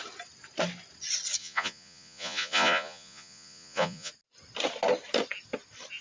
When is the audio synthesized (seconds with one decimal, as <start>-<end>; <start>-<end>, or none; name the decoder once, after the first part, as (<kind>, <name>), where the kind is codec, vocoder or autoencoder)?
1.4-4.1 (vocoder, Vocos)